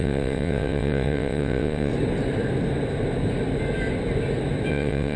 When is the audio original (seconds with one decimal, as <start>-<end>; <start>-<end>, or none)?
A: 1.9-4.7